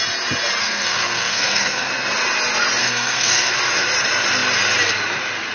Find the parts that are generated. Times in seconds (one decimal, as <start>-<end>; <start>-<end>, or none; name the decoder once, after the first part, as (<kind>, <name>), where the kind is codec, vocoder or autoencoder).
0.6-1.9 (codec, SNAC); 2.8-3.5